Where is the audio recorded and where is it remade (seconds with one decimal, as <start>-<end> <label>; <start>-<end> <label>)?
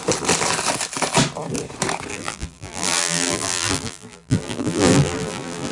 0.0-2.1 recorded; 2.1-5.7 remade